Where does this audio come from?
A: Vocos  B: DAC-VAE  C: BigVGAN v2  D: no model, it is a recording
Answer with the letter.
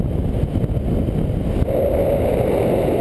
D